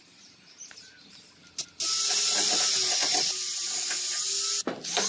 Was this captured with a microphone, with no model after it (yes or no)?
yes